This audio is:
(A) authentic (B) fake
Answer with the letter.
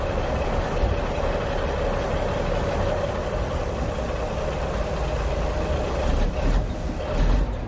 A